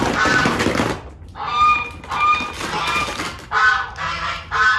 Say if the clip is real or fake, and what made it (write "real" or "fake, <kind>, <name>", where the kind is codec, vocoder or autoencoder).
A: real